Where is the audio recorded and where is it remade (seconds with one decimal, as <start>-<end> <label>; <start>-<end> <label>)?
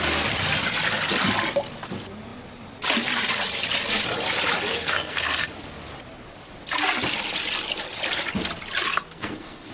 0.0-4.7 recorded; 4.7-5.4 remade; 5.4-8.9 recorded; 8.9-9.7 remade